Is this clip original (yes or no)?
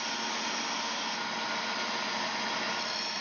yes